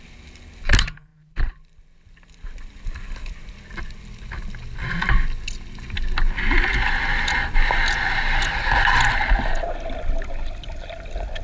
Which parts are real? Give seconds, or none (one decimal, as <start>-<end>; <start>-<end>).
0.0-1.1; 3.5-11.4